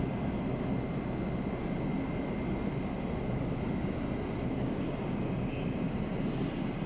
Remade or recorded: recorded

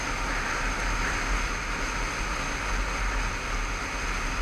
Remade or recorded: recorded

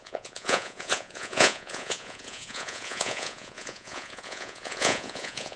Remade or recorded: remade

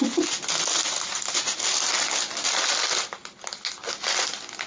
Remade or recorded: recorded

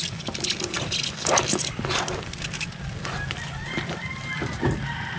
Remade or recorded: remade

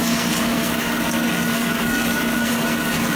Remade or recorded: remade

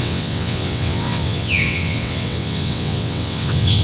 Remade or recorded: remade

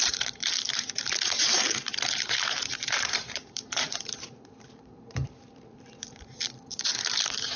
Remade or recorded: remade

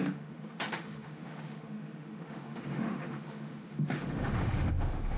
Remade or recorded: remade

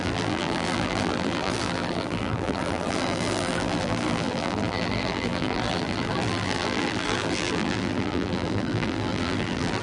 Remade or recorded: remade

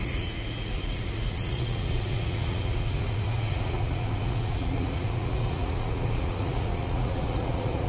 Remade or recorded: remade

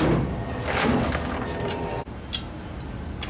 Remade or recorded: recorded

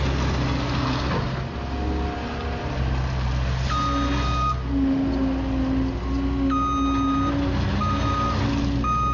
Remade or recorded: recorded